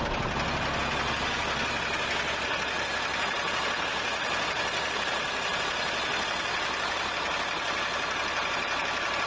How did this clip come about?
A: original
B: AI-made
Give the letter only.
A